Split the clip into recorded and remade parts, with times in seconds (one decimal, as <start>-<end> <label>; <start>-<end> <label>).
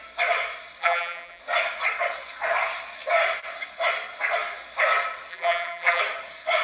0.0-0.8 recorded; 0.8-1.4 remade; 1.4-5.3 recorded; 5.3-6.0 remade; 6.0-6.6 recorded